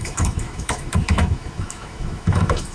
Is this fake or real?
fake